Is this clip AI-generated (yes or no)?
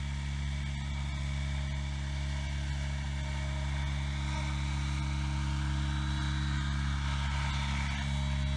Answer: no